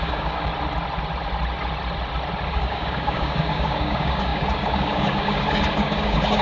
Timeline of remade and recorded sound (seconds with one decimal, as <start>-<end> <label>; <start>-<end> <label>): 0.0-0.5 remade; 0.5-2.5 recorded; 2.5-6.4 remade